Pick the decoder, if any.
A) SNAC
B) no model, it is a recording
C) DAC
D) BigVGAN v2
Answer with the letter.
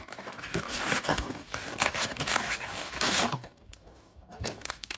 C